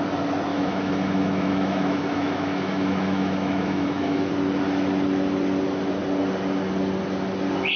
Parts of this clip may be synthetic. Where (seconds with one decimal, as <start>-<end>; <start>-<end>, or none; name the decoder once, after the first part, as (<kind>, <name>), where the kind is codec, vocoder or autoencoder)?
0.5-4.3 (autoencoder, DAC-VAE)

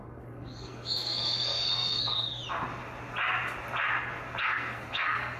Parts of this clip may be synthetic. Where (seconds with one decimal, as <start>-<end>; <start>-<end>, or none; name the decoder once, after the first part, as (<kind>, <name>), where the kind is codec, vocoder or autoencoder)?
0.0-2.4 (codec, SNAC); 4.4-5.4